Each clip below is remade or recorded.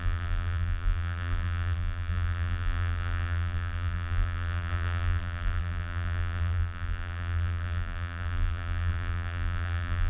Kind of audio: remade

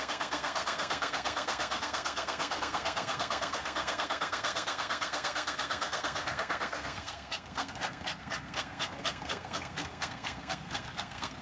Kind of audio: remade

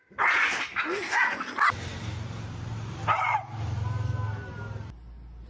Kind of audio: recorded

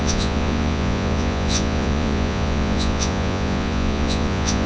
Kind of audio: remade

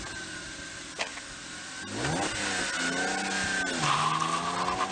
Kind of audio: recorded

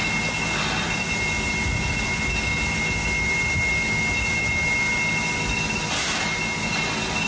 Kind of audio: recorded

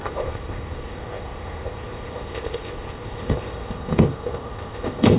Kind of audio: remade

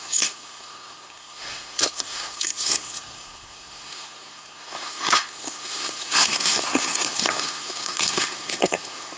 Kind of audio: remade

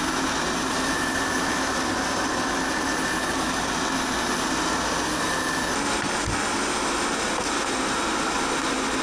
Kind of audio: recorded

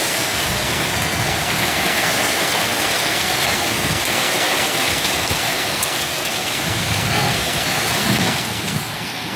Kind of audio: remade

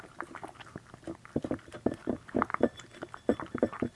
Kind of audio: recorded